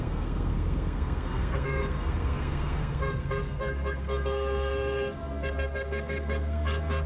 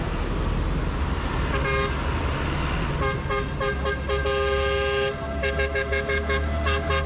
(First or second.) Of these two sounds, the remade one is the first